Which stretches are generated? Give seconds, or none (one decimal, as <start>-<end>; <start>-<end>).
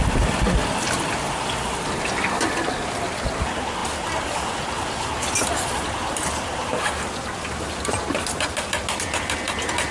0.6-2.4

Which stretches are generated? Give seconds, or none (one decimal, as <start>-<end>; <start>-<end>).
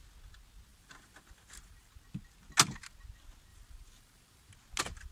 0.7-1.9; 3.5-4.5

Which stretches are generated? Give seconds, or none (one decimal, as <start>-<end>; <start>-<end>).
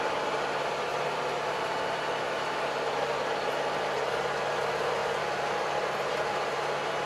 none